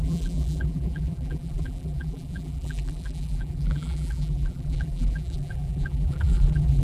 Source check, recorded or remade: remade